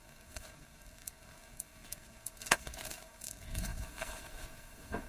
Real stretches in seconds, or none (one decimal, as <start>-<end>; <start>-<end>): none